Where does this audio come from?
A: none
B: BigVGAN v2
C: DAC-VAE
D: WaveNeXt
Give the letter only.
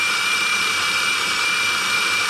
B